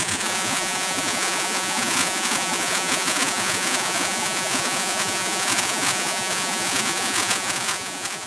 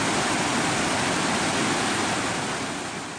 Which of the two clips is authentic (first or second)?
second